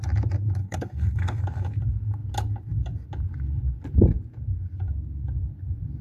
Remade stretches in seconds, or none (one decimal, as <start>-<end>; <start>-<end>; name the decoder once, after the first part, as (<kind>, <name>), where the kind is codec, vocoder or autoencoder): 0.6-1.4 (codec, SNAC)